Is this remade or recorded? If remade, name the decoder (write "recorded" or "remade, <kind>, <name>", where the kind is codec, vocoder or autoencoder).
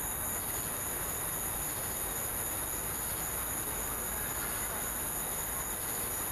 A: recorded